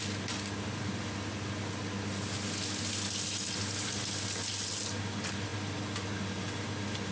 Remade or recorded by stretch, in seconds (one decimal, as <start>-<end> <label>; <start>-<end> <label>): 0.0-7.1 recorded

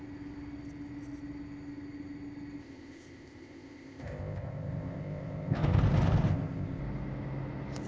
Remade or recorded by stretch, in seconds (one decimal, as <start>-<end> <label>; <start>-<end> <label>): 0.0-2.6 recorded; 2.6-5.8 remade; 5.8-6.3 recorded; 6.3-6.8 remade; 6.8-7.9 recorded

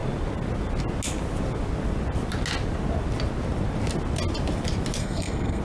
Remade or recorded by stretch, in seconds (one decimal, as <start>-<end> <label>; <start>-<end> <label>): 0.0-5.0 recorded; 5.0-5.6 remade

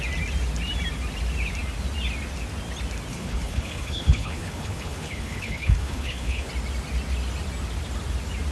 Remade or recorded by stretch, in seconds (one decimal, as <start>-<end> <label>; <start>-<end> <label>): 0.0-3.1 recorded; 3.1-6.5 remade; 6.5-8.5 recorded

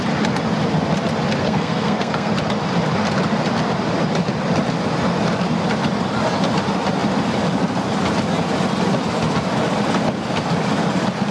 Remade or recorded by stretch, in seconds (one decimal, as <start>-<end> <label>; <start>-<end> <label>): 0.0-1.4 recorded; 1.4-2.3 remade; 2.3-11.3 recorded

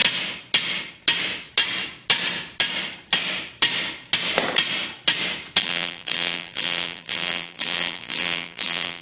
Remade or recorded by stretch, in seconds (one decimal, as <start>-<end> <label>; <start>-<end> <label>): 0.0-5.6 recorded; 5.6-9.0 remade